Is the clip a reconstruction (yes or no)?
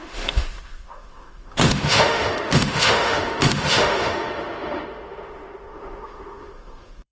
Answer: yes